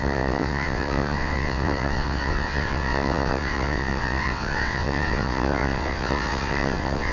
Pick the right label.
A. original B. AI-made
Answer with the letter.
B